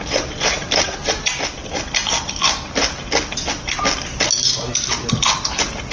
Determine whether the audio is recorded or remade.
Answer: recorded